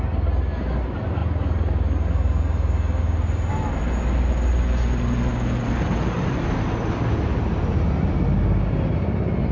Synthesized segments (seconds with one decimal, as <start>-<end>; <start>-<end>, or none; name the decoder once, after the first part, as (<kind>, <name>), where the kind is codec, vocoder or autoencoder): none